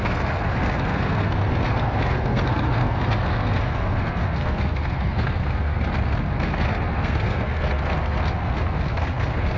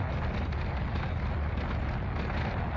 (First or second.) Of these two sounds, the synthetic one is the first